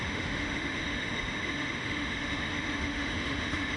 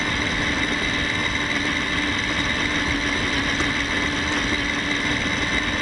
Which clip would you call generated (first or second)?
first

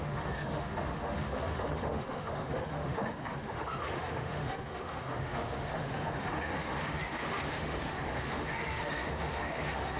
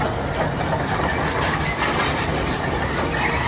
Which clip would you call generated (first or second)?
first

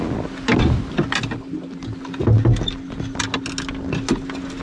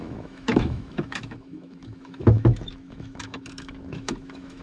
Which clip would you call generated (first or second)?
second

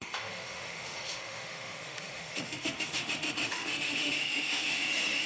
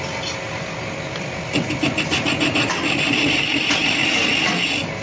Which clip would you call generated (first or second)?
first